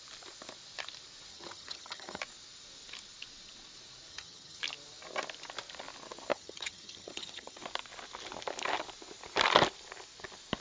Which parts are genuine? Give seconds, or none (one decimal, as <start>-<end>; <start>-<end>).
0.0-1.3; 2.2-4.1; 4.6-6.3; 7.6-10.6